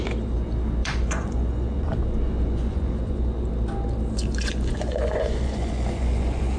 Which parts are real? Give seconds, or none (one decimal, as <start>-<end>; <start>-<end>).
0.0-0.8; 3.5-4.4